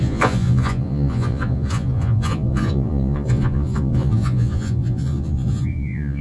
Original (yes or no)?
no